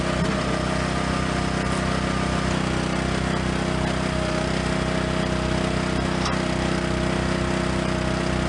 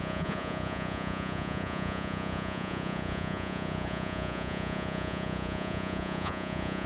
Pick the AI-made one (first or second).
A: second